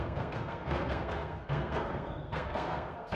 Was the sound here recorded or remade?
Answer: remade